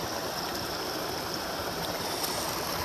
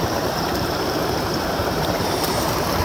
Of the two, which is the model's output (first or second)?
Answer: second